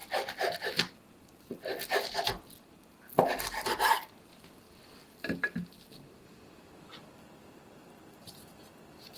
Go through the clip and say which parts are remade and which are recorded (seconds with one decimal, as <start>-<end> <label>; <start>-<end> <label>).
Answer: 0.0-9.2 recorded